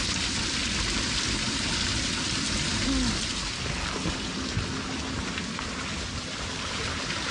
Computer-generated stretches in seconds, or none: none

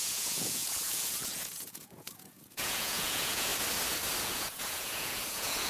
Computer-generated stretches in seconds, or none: 0.0-3.5 (vocoder, Vocos); 4.2-5.7

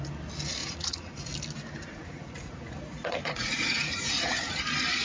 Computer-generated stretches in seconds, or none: 0.6-1.3 (vocoder, Vocos); 1.9-4.6

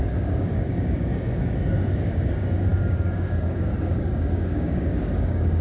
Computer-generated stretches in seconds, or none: 0.0-5.6 (codec, DAC)

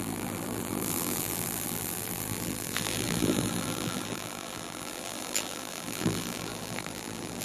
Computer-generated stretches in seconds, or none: 0.0-7.4 (vocoder, BigVGAN v2)

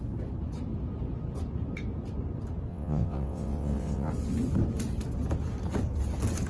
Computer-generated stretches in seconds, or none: 2.7-4.1 (vocoder, WaveNeXt)

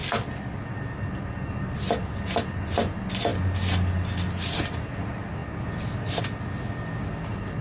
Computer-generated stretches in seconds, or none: none